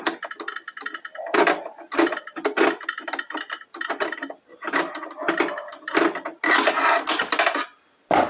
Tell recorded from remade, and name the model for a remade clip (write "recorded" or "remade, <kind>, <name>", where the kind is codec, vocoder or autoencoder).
recorded